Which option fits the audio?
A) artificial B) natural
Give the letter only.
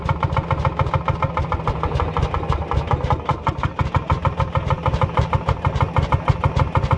B